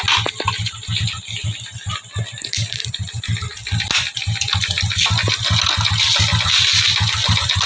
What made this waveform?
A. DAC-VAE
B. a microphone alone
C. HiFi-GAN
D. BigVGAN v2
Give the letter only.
B